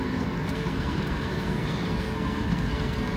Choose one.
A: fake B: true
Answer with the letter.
A